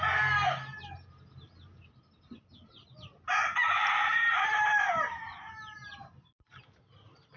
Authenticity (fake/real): real